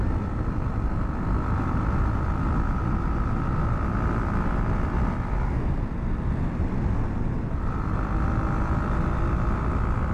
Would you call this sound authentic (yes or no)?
yes